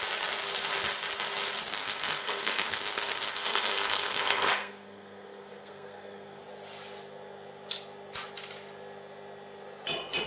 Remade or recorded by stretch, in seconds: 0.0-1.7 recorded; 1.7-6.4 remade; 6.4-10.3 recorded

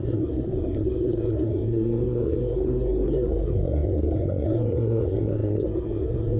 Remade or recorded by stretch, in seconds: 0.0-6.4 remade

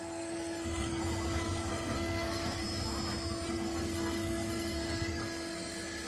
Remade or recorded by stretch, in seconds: 0.0-1.0 remade; 1.0-1.7 recorded; 1.7-2.6 remade; 2.6-3.5 recorded; 3.5-5.2 remade; 5.2-6.1 recorded

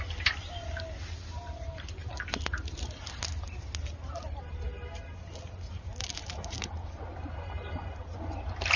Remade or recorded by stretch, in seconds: 0.0-8.8 recorded

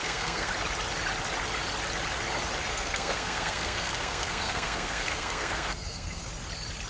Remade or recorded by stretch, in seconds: 0.0-0.5 remade; 0.5-2.7 recorded; 2.7-6.3 remade; 6.3-6.9 recorded

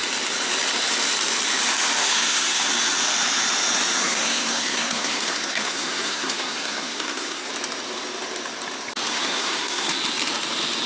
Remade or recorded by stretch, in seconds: 0.0-2.0 recorded; 2.0-2.6 remade; 2.6-4.0 recorded; 4.0-7.5 remade; 7.5-9.1 recorded; 9.1-9.9 remade; 9.9-10.9 recorded

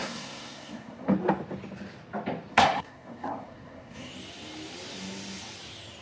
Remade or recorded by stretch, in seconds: 0.0-1.1 remade; 1.1-2.5 recorded; 2.5-4.1 remade; 4.1-6.0 recorded

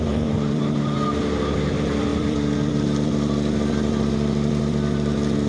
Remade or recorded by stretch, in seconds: 0.0-5.5 recorded